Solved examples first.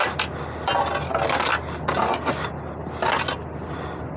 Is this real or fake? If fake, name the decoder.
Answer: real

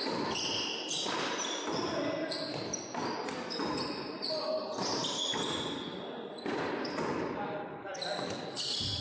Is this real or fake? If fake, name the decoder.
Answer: real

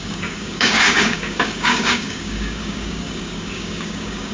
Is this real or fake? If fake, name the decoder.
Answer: fake, codec, DAC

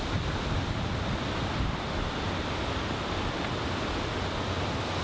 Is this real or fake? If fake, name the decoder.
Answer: real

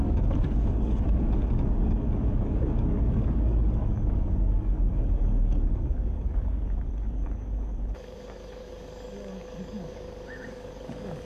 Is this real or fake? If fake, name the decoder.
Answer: fake, codec, DAC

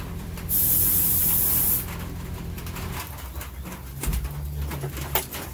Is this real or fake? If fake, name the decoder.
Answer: real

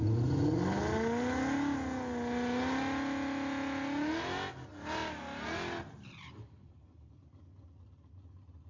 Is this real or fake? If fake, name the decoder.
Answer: real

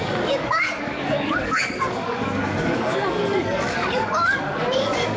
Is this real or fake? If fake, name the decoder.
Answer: fake, codec, DAC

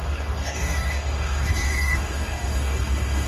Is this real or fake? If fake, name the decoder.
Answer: fake, codec, DAC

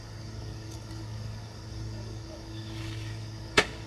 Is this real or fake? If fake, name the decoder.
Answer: fake, codec, DAC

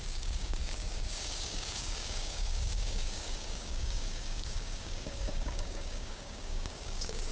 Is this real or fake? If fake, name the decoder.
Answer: fake, codec, DAC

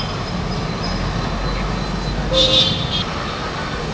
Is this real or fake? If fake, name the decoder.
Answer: real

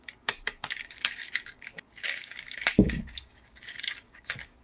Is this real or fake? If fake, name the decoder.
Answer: fake, codec, DAC